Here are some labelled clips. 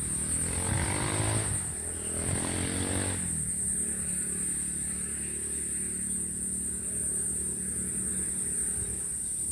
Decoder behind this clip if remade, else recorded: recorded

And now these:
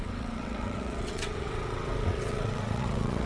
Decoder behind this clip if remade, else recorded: remade, vocoder, WaveNeXt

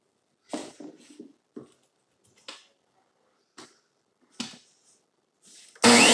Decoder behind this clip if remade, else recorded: recorded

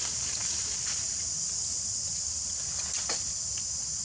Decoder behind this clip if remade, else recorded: recorded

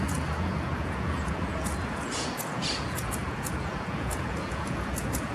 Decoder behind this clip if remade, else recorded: remade, vocoder, Vocos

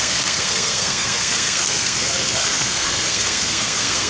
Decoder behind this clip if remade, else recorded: remade, codec, SNAC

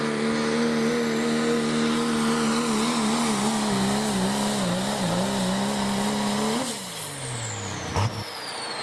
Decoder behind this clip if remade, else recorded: recorded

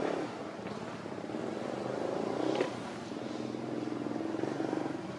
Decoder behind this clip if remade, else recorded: recorded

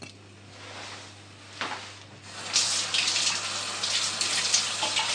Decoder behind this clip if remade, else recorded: recorded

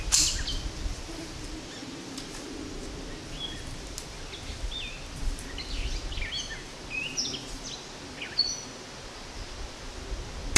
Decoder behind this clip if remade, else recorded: recorded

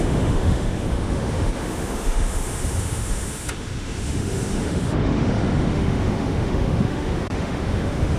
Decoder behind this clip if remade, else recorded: remade, autoencoder, DAC-VAE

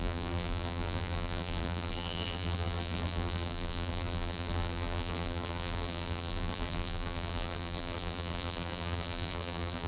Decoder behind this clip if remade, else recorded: remade, vocoder, BigVGAN v2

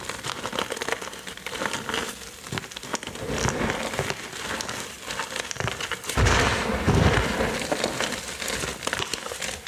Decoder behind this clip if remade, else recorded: recorded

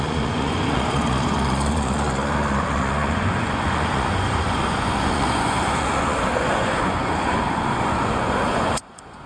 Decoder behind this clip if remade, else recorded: remade, vocoder, Vocos